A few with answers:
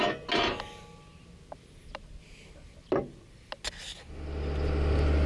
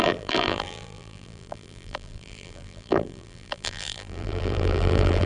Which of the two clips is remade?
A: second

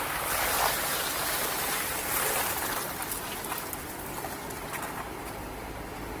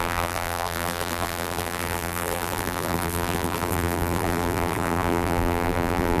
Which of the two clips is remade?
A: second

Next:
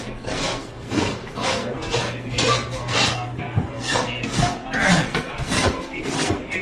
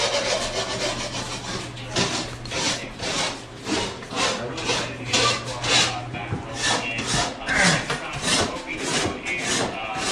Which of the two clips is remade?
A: first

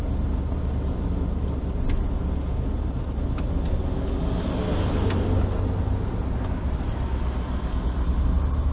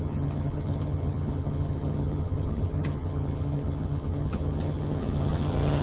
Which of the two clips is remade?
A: second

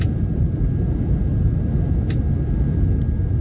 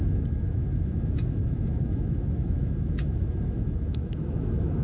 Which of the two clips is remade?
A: second